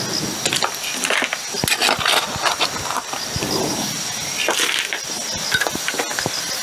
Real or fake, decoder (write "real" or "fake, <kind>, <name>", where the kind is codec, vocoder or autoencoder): real